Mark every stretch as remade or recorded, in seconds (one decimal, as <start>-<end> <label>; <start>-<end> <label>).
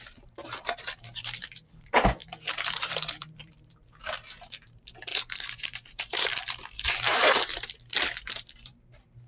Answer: 0.0-9.3 remade